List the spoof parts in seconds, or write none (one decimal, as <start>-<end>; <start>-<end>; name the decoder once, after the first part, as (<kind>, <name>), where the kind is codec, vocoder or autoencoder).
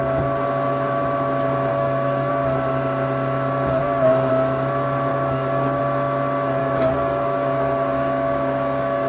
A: 1.7-2.3 (codec, DAC); 3.8-4.3; 5.1-5.8; 6.6-9.1